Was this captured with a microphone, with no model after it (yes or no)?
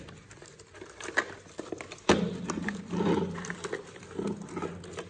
yes